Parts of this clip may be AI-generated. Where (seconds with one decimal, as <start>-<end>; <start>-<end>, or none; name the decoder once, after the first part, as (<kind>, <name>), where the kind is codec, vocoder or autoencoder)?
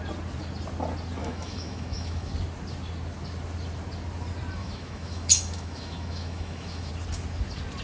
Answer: 1.2-2.3 (autoencoder, DAC-VAE); 4.6-6.9